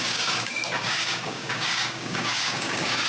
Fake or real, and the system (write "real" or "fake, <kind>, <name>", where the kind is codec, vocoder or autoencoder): fake, codec, DAC